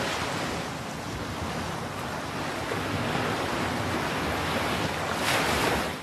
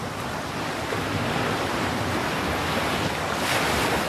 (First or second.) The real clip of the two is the first